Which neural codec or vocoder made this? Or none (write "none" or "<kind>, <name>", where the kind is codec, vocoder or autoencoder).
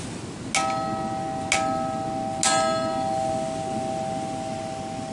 none